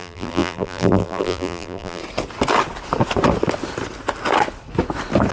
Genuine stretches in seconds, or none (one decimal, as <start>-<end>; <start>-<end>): 2.0-5.3